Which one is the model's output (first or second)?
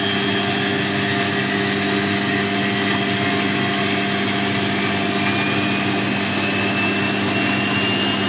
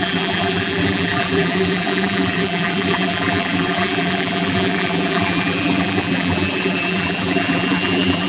second